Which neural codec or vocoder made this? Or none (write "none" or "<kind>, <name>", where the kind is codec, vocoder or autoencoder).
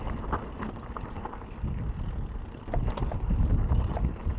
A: none